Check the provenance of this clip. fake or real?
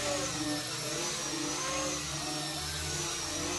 real